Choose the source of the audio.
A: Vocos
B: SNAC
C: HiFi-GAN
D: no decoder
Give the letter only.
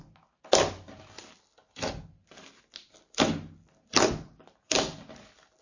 D